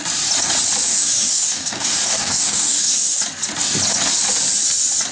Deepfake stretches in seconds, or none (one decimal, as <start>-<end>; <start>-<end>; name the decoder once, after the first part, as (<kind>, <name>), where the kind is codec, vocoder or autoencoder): 0.9-3.2 (codec, DAC)